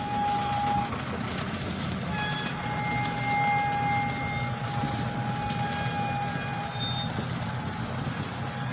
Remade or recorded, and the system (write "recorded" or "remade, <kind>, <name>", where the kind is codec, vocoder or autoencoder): recorded